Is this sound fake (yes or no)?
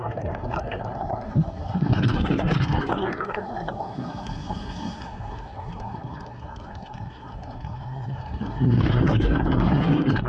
yes